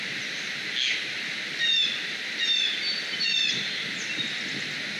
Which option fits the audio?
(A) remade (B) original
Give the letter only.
B